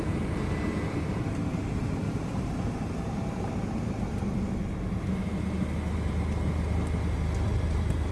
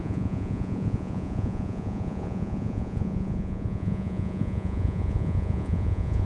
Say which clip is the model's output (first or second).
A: second